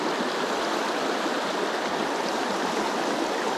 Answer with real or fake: real